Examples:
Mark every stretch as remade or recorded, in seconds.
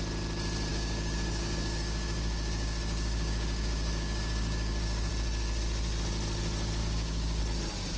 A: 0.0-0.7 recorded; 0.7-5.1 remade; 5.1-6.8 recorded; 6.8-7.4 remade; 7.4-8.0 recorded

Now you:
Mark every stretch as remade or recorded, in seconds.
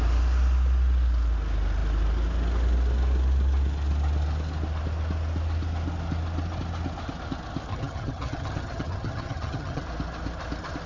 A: 0.0-7.7 recorded; 7.7-9.8 remade; 9.8-10.9 recorded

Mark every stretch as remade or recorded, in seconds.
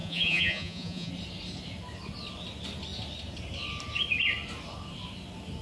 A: 0.0-1.1 remade; 1.1-5.6 recorded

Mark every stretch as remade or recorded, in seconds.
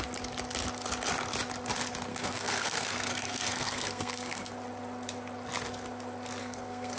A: 0.0-2.1 recorded; 2.1-4.5 remade; 4.5-6.4 recorded; 6.4-7.0 remade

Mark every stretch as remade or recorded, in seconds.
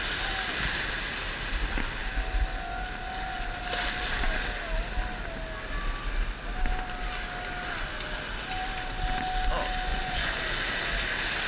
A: 0.0-9.9 recorded; 9.9-10.4 remade; 10.4-11.5 recorded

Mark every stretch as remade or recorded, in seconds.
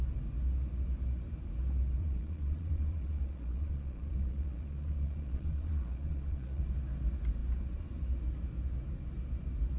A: 0.0-2.0 recorded; 2.0-6.6 remade; 6.6-9.8 recorded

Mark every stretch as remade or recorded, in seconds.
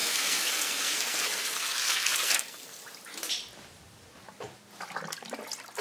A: 0.0-2.8 remade; 2.8-5.8 recorded